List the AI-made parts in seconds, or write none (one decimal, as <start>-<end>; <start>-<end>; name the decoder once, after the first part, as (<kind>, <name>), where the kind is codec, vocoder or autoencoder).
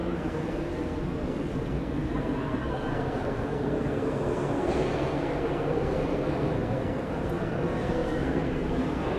0.0-9.2 (codec, SNAC)